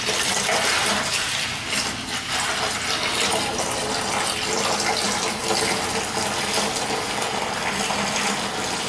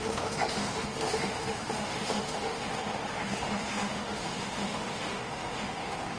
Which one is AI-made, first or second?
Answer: second